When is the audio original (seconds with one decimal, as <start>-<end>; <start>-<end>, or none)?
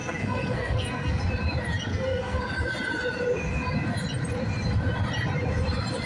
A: 1.2-1.9; 2.4-6.1